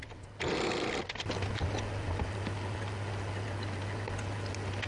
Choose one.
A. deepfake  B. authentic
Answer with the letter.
B